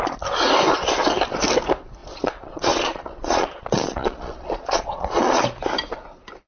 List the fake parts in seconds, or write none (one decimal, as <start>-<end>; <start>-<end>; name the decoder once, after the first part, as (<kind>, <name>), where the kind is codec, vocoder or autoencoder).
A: 2.0-5.4 (vocoder, Vocos)